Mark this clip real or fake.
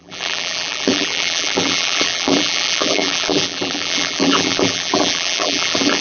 fake